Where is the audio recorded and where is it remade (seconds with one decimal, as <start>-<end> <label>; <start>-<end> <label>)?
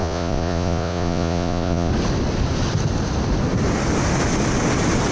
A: 0.0-1.9 remade; 1.9-5.1 recorded